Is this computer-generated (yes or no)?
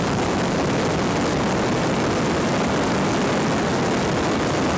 no